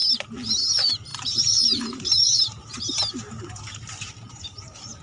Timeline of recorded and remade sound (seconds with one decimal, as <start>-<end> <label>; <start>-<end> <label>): 0.0-0.7 recorded; 0.7-5.0 remade